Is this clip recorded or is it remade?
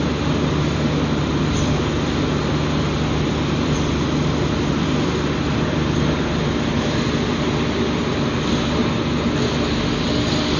recorded